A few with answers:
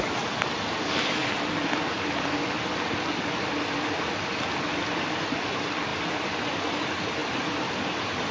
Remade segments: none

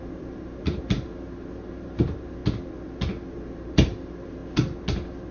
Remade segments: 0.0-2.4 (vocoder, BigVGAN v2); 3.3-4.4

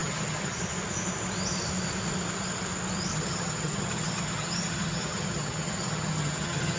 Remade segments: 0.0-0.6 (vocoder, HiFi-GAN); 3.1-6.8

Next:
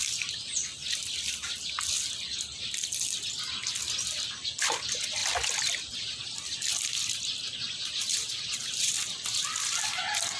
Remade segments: 8.3-8.9 (vocoder, BigVGAN v2)